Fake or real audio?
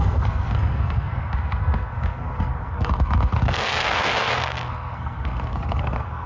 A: fake